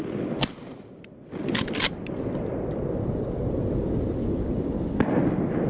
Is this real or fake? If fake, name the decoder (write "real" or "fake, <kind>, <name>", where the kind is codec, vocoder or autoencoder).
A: real